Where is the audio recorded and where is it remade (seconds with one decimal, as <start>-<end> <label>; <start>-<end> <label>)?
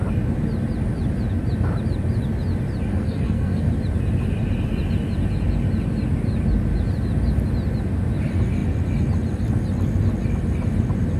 0.0-2.9 recorded; 2.9-3.7 remade; 3.7-11.2 recorded